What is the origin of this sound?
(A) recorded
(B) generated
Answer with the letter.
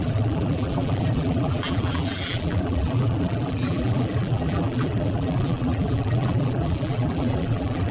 B